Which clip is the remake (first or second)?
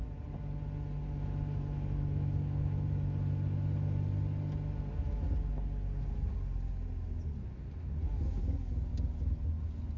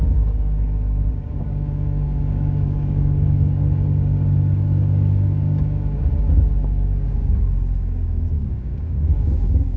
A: second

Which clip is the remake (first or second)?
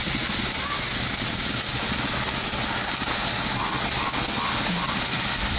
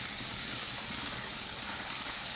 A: second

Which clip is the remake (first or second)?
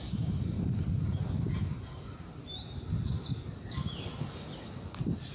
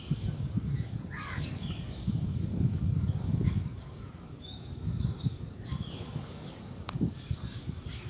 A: second